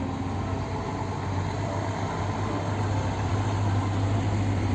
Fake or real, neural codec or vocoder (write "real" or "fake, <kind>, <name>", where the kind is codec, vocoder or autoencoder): real